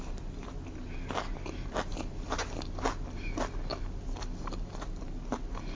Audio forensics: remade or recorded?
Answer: recorded